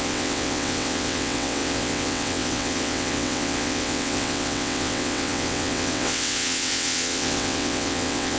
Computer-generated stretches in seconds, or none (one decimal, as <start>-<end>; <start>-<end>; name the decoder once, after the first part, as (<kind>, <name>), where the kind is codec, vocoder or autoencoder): 0.0-8.4 (vocoder, WaveNeXt)